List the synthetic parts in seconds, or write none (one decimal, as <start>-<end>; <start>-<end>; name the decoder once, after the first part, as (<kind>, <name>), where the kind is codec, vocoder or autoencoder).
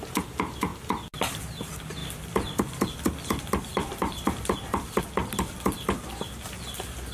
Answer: 2.0-5.0 (vocoder, BigVGAN v2)